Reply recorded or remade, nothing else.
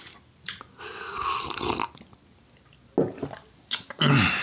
recorded